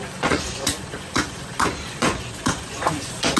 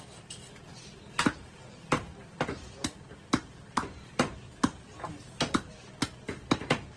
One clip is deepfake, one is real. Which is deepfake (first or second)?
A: first